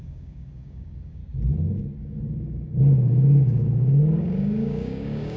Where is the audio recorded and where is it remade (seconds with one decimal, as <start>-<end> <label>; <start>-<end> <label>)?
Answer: 0.0-1.2 remade; 1.2-2.0 recorded; 2.0-5.4 remade